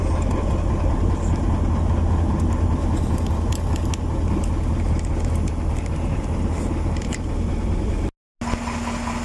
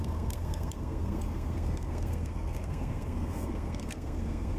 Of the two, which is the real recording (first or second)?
first